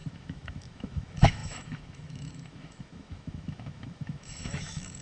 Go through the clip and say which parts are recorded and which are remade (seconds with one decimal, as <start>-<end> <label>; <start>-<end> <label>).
0.0-5.0 remade